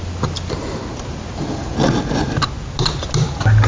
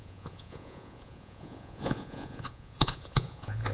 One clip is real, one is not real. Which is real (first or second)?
first